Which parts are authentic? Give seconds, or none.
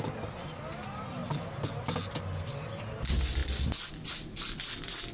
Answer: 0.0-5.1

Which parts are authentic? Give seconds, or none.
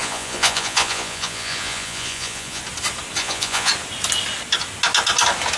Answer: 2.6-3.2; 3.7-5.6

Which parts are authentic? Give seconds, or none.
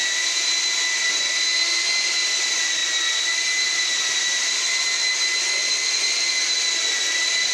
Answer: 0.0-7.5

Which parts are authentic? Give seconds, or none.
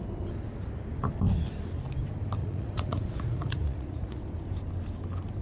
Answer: 0.0-2.4; 4.2-5.4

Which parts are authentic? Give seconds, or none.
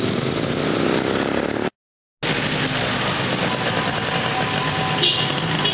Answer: 0.0-5.7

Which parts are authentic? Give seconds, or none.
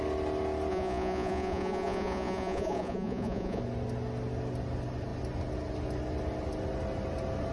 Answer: 0.0-0.7; 3.6-7.5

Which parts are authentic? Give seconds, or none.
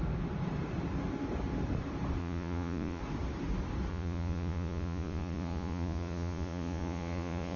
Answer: 0.0-2.2; 3.0-3.9